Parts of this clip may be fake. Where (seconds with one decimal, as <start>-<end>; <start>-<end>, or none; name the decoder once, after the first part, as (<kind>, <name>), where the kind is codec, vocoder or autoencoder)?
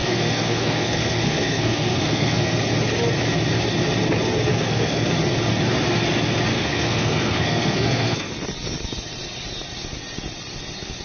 0.0-2.6 (codec, SNAC); 4.5-5.1; 6.5-8.3